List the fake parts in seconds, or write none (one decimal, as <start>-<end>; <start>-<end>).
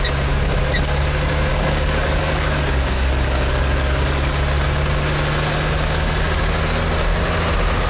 1.5-4.3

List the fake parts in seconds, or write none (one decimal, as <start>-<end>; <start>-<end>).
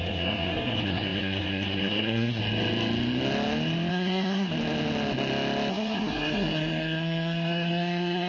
0.0-2.4; 3.9-4.5; 5.7-8.3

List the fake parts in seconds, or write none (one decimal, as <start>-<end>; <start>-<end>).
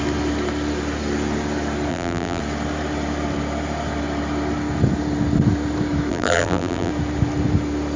1.9-2.4; 6.1-6.9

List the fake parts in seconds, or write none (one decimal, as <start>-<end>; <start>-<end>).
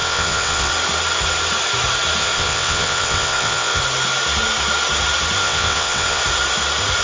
0.0-0.7; 2.2-3.8; 5.4-6.2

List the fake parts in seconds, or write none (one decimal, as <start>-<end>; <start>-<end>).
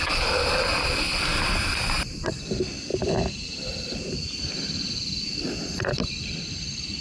2.9-5.7; 6.2-7.0